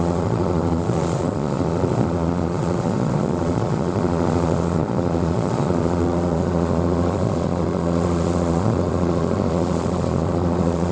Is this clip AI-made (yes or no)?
yes